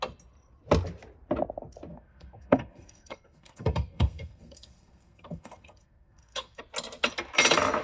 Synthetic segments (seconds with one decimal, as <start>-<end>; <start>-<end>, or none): 1.9-6.6